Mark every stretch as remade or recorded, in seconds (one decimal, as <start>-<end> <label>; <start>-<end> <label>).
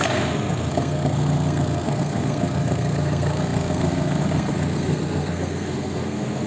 0.0-6.5 remade